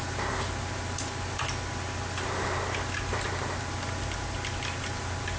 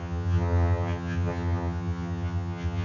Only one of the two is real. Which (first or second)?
first